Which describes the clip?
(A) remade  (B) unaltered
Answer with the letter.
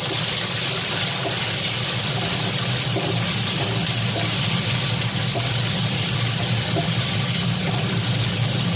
B